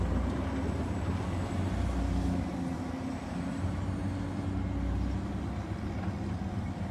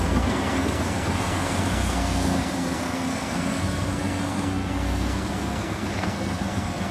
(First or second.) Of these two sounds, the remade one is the second